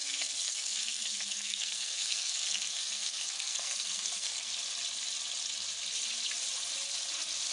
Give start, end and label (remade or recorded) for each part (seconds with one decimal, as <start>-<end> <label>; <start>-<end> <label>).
0.0-4.5 remade; 4.5-7.5 recorded